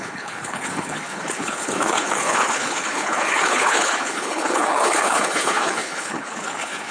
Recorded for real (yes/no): no